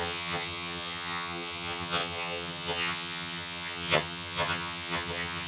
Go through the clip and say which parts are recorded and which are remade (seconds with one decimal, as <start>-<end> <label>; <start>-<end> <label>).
0.0-5.5 remade